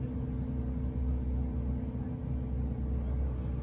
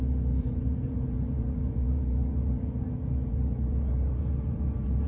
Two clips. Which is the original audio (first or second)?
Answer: first